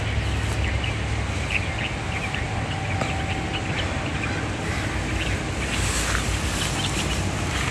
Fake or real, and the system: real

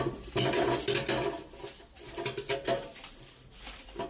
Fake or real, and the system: real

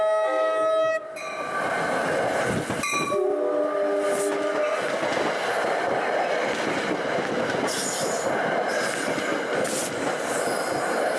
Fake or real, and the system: real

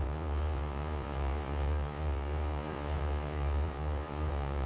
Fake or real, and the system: fake, vocoder, Vocos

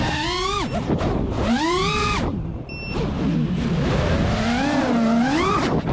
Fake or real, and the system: real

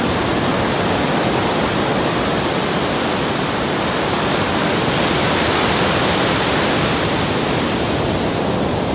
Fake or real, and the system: real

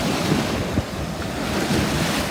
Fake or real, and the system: real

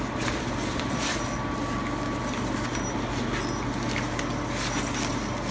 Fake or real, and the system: real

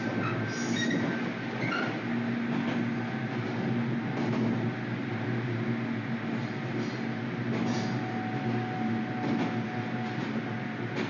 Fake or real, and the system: real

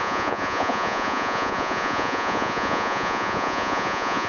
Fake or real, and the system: fake, vocoder, Vocos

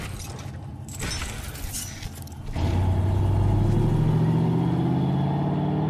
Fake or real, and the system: real